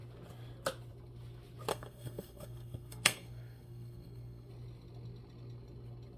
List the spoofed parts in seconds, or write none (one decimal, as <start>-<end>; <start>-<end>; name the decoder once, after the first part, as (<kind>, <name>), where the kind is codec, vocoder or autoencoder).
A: 1.7-4.5 (codec, SNAC)